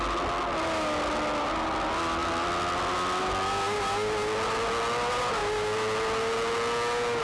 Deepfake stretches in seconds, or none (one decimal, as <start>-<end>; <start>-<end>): none